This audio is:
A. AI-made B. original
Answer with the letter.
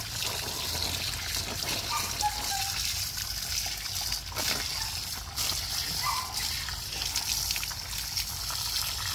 B